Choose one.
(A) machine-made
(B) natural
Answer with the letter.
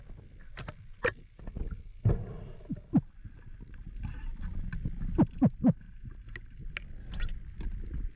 B